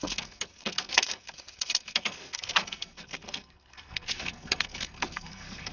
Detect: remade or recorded remade